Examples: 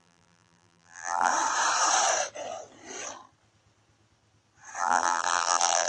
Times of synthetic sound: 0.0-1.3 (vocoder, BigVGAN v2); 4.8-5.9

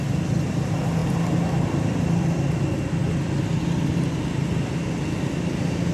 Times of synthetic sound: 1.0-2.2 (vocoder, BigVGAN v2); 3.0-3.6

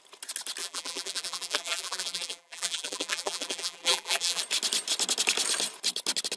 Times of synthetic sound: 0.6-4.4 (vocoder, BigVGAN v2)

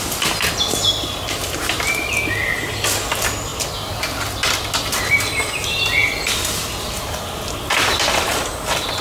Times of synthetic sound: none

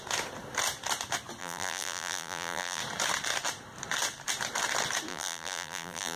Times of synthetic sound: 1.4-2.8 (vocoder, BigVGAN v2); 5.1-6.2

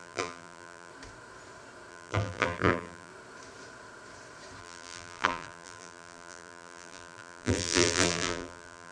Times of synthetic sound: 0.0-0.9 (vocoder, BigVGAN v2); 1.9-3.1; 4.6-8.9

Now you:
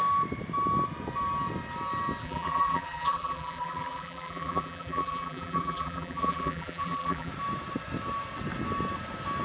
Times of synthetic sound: 2.2-7.3 (vocoder, BigVGAN v2)